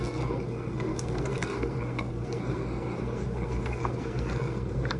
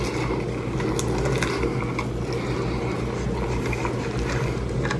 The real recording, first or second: second